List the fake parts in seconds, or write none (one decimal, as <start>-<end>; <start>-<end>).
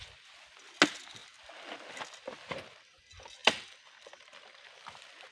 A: 1.2-2.2; 3.4-4.7